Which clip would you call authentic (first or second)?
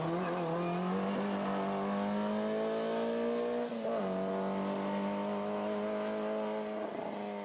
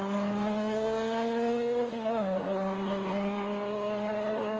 first